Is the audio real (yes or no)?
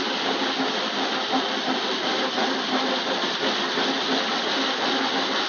yes